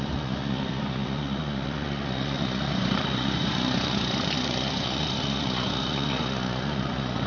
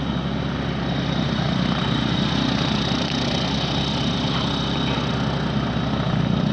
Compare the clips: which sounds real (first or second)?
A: second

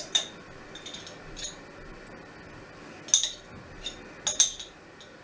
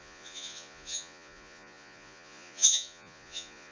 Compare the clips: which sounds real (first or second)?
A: first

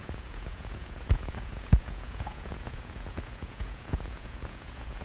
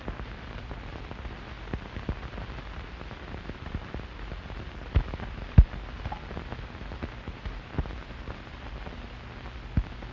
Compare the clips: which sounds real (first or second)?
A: second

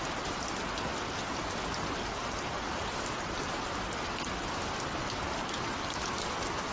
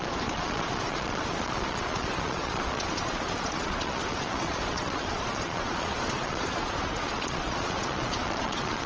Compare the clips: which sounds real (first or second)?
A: first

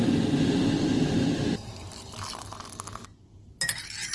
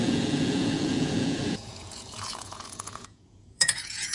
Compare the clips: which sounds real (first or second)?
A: first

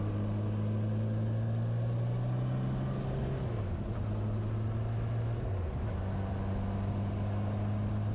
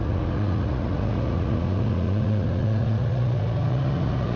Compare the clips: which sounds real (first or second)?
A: first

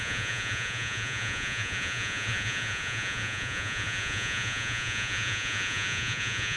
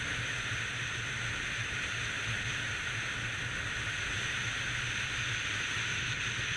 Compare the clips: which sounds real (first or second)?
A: second